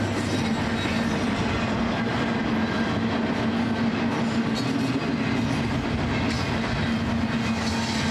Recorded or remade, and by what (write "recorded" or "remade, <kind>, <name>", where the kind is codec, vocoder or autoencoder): recorded